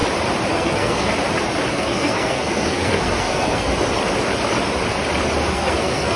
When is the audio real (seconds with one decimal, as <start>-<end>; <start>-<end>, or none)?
0.0-0.5; 1.1-1.7; 3.7-5.5